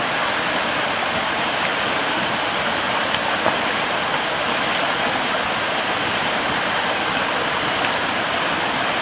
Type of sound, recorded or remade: recorded